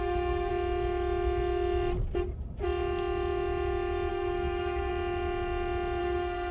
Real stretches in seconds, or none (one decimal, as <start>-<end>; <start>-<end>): 0.5-4.1; 4.9-6.0